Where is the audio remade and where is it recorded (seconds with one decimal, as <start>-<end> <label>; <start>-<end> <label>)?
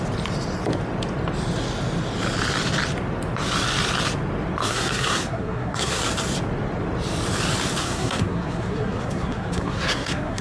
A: 0.0-4.6 recorded; 4.6-6.0 remade; 6.0-7.8 recorded; 7.8-10.4 remade